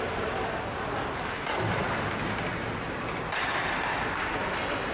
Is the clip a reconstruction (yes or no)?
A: no